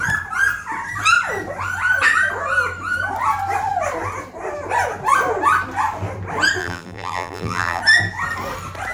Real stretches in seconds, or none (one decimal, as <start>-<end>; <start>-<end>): 0.0-6.6; 7.8-8.9